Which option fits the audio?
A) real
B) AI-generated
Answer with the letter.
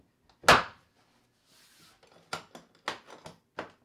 A